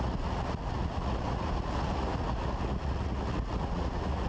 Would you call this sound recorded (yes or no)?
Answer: no